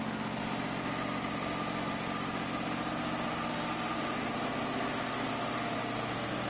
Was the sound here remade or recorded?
recorded